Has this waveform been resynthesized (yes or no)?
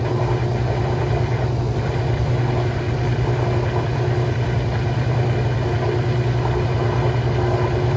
no